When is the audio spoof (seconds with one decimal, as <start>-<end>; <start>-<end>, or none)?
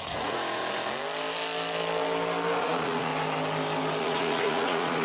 0.0-0.6; 2.6-3.1; 4.0-5.0